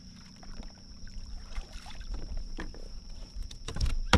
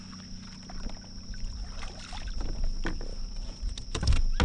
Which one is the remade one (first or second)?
first